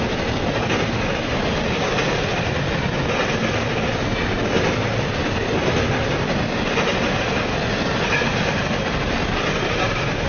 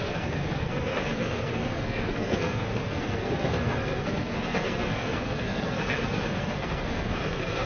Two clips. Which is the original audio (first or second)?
first